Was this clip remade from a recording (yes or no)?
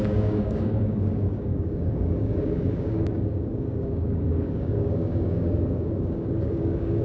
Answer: yes